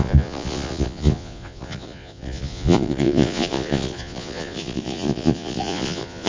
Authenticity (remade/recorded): remade